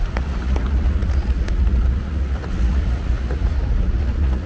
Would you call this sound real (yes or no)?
no